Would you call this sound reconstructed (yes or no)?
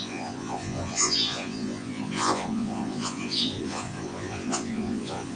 yes